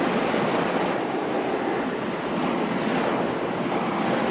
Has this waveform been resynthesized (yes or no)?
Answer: yes